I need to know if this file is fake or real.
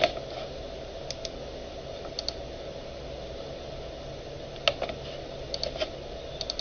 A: real